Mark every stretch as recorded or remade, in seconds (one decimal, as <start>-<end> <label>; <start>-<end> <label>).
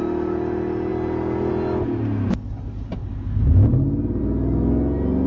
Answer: 0.0-5.3 recorded